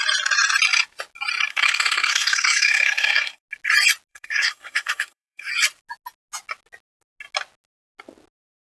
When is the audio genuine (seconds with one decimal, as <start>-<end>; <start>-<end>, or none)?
0.0-1.5; 3.4-4.1; 5.5-8.6